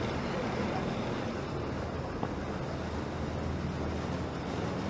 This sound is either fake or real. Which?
real